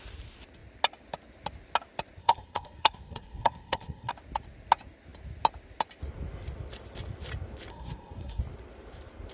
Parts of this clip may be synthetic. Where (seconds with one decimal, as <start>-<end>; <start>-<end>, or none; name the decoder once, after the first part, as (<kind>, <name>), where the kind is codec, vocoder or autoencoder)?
2.2-4.1 (codec, SNAC); 7.7-8.4